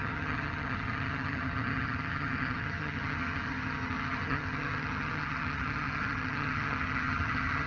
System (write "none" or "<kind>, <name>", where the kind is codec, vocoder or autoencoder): vocoder, HiFi-GAN